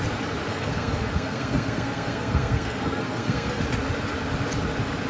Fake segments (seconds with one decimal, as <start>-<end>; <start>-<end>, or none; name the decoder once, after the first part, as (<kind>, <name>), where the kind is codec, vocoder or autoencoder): 0.5-3.6 (codec, SNAC)